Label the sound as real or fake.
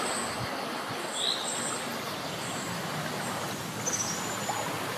real